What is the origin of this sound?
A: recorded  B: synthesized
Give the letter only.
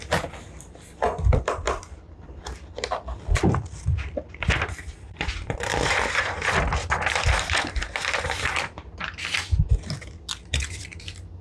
B